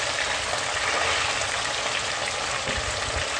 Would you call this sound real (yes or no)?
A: yes